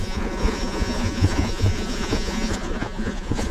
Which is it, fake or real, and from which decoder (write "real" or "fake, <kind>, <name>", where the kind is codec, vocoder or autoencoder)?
fake, vocoder, Vocos